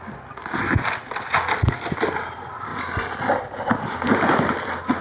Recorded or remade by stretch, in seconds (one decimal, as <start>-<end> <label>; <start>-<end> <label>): 0.0-5.0 recorded